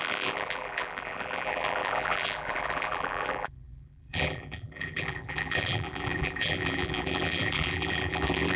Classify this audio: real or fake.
fake